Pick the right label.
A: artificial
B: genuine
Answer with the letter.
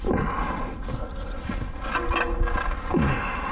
B